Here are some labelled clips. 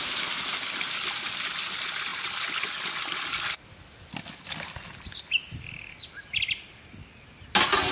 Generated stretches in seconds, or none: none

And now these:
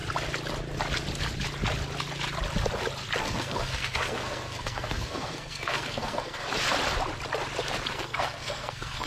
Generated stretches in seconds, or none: 3.2-6.5; 7.9-9.1

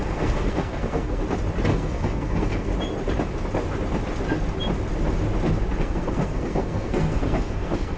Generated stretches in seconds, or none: 0.0-1.2; 1.7-2.7; 5.8-8.0

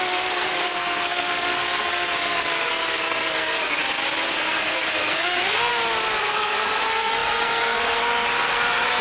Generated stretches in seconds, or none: 0.0-3.8; 4.3-5.7; 6.2-9.0

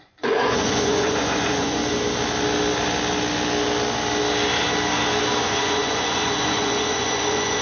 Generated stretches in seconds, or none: 0.0-1.8; 5.4-7.6

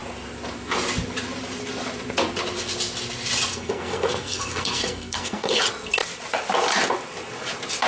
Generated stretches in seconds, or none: 3.5-5.6

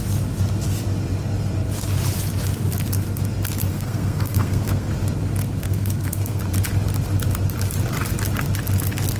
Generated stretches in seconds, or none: 3.7-4.9; 5.6-6.4

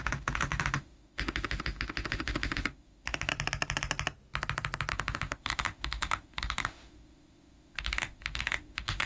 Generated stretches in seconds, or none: 0.0-3.3; 4.9-9.1